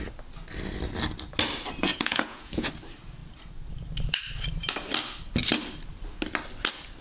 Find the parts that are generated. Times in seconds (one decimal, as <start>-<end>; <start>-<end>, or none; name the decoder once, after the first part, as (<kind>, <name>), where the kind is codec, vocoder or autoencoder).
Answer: 1.9-2.7 (vocoder, Vocos)